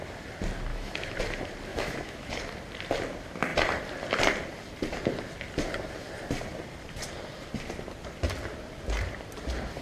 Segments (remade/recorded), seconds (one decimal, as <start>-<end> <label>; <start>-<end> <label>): 0.0-0.7 recorded; 0.7-1.2 remade; 1.2-1.7 recorded; 1.7-2.3 remade; 2.3-9.8 recorded